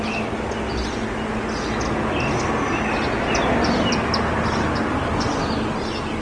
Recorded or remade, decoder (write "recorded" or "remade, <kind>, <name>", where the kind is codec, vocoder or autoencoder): recorded